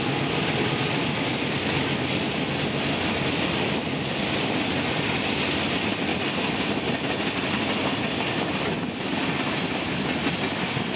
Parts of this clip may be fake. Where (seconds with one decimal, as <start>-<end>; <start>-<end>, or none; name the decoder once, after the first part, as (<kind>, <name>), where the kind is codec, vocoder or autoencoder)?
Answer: none